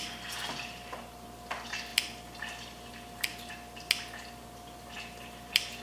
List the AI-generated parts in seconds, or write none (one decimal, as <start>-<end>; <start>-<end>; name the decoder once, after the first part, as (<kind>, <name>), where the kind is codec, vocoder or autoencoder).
none